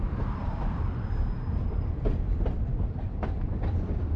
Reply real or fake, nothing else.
real